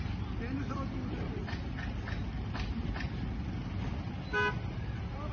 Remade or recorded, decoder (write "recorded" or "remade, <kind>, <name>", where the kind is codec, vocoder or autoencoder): recorded